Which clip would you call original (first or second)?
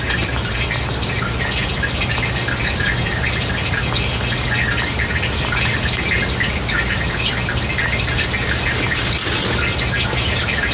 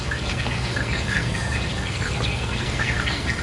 first